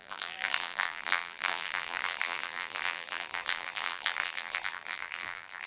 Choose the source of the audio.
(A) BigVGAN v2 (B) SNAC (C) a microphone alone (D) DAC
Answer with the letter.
A